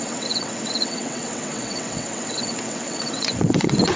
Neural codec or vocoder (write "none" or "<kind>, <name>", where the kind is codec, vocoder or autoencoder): vocoder, WaveNeXt